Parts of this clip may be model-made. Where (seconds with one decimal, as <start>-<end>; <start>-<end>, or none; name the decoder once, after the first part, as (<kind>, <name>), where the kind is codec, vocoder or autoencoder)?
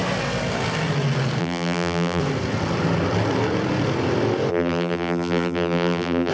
1.4-2.2 (vocoder, BigVGAN v2); 4.5-6.3